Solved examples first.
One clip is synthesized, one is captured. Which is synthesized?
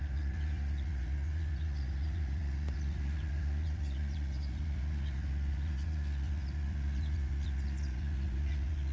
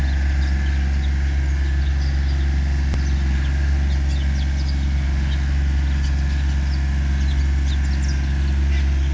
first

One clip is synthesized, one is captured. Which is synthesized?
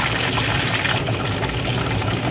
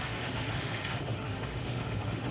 second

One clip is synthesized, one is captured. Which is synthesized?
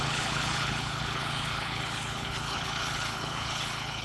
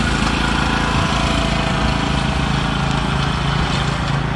first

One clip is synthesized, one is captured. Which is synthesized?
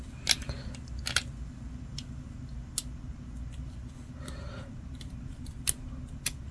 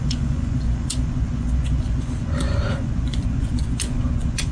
second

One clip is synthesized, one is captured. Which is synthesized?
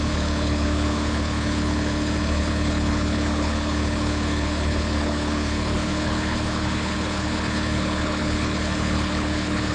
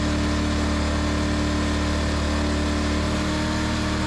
first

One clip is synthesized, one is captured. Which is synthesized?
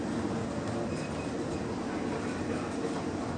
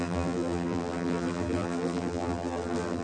second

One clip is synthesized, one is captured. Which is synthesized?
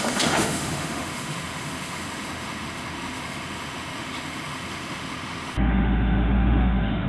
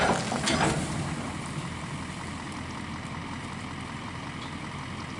first